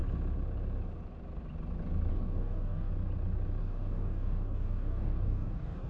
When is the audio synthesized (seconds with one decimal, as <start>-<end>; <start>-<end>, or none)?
2.1-2.9; 3.6-5.9